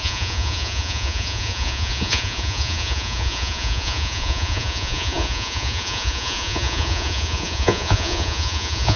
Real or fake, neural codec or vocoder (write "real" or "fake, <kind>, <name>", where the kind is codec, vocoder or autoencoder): fake, vocoder, Vocos